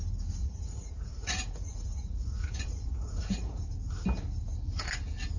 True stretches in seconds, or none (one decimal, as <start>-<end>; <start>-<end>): 0.0-0.4; 3.6-5.4